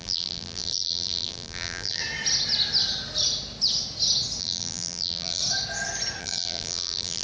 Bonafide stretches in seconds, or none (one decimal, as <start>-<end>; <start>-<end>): 2.0-4.4; 5.4-6.2